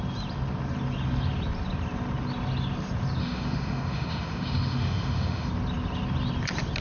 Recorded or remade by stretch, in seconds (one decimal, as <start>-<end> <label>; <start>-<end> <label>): 0.0-3.2 recorded; 3.2-5.5 remade; 5.5-6.8 recorded